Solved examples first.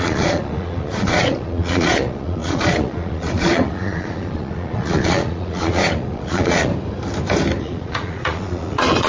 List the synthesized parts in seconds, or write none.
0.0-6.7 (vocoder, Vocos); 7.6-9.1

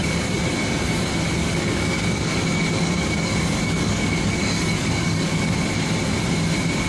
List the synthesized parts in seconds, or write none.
0.0-0.5 (codec, DAC); 1.4-5.5